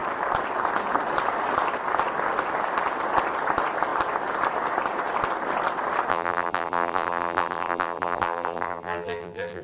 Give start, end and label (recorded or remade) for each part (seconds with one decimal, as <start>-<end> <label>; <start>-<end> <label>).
0.0-6.1 recorded; 6.1-9.6 remade